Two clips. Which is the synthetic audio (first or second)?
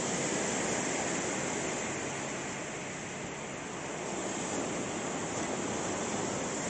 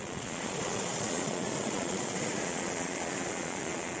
second